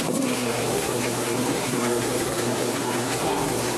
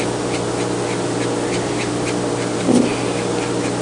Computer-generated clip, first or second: first